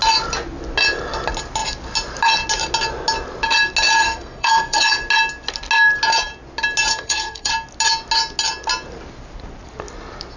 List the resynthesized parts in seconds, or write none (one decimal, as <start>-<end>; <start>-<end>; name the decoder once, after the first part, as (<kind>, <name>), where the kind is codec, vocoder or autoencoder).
4.0-4.8 (codec, SNAC); 6.9-7.5